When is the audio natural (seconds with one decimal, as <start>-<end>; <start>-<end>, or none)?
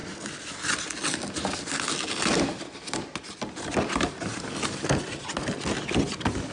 0.0-6.5